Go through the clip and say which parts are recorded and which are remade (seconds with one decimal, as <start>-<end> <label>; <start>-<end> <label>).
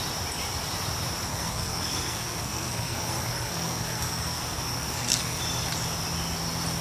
0.0-1.3 recorded; 1.3-5.4 remade; 5.4-6.8 recorded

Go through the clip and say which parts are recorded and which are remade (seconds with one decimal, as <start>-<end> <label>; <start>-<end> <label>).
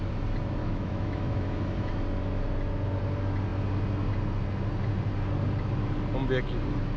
0.0-0.6 recorded; 0.6-1.9 remade; 1.9-7.0 recorded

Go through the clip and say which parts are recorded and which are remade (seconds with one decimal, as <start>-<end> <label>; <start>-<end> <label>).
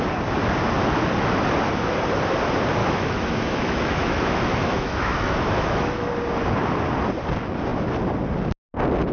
0.0-2.8 recorded; 2.8-6.1 remade; 6.1-9.1 recorded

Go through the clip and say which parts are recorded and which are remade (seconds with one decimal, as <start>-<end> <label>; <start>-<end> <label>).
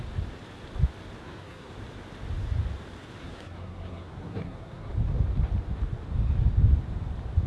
0.0-1.2 recorded; 1.2-1.7 remade; 1.7-3.2 recorded; 3.2-4.9 remade; 4.9-7.5 recorded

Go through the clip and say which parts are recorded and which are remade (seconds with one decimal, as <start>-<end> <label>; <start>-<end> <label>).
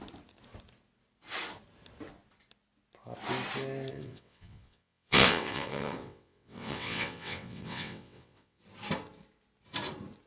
0.0-3.9 recorded; 3.9-8.6 remade; 8.6-10.3 recorded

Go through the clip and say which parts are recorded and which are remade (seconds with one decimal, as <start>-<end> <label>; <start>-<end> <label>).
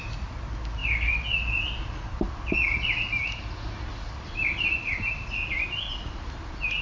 0.0-6.8 recorded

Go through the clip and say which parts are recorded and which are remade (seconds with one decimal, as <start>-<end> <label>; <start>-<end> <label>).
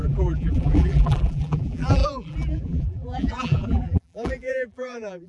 0.0-5.3 remade